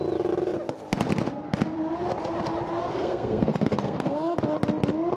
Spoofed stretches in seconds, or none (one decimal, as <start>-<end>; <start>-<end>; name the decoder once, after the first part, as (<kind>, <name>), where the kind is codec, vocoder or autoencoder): 2.8-4.4 (codec, SNAC)